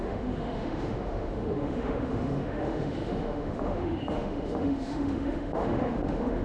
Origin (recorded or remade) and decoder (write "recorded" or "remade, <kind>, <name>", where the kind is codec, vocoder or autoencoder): remade, autoencoder, DAC-VAE